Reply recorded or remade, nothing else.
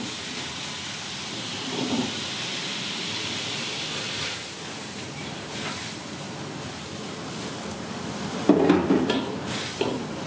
remade